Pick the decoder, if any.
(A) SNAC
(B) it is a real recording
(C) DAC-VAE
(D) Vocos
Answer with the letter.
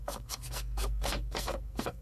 A